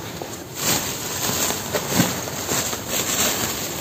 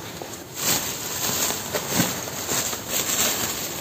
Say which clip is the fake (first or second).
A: first